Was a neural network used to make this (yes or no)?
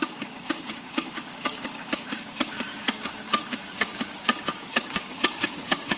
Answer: yes